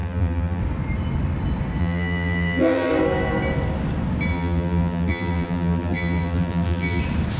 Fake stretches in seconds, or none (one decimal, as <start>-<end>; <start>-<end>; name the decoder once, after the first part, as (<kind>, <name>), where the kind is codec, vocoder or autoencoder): 0.0-0.6 (vocoder, BigVGAN v2); 1.8-2.9; 4.3-7.0